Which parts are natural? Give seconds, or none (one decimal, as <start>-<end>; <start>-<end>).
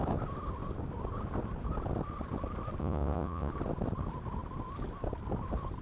0.0-2.8; 3.5-5.8